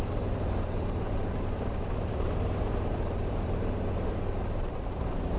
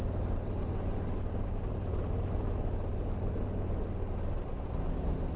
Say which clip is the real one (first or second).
second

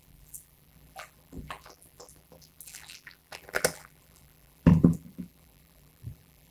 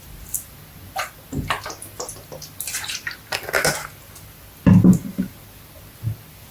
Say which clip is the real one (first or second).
second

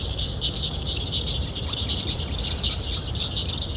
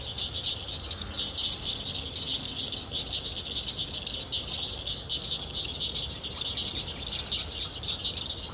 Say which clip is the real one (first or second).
second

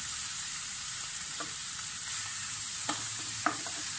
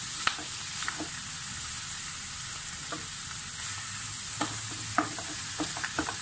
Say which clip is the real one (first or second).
second